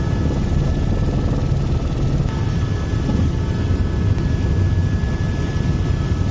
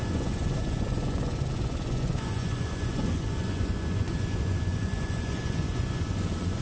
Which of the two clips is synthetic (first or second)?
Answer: second